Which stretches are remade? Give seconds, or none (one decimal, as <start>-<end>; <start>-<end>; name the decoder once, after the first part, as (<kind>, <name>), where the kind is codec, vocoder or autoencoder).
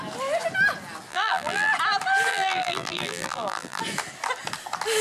1.1-1.7 (vocoder, BigVGAN v2); 2.3-3.8